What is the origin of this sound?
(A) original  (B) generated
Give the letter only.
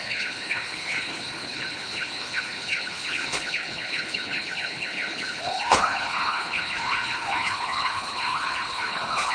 B